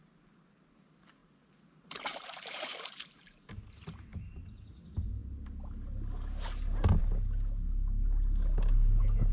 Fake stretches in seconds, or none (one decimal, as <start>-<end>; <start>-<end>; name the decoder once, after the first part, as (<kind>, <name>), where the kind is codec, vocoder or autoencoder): 1.2-3.5 (vocoder, BigVGAN v2)